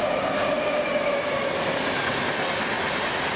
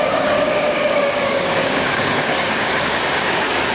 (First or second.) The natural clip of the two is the first